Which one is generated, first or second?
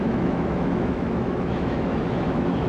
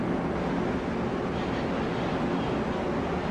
first